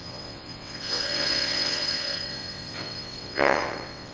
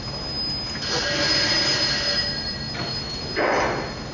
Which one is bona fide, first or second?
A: second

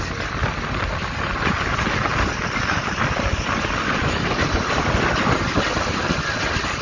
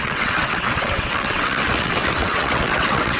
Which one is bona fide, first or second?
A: first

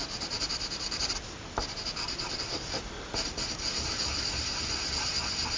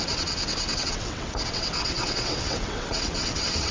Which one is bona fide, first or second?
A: first